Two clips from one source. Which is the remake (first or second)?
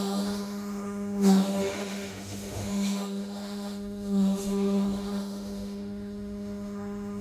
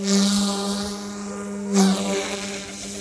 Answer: first